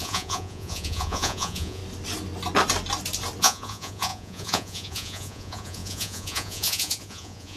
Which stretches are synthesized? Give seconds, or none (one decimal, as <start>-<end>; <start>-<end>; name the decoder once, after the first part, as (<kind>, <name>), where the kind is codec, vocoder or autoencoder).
0.0-1.8 (vocoder, Vocos); 3.4-7.6